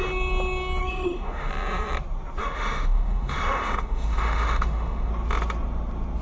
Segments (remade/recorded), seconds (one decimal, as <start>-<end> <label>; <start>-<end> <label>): 0.0-0.8 recorded; 0.8-1.5 remade; 1.5-2.4 recorded; 2.4-5.1 remade; 5.1-6.2 recorded